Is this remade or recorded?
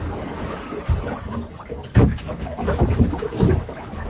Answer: remade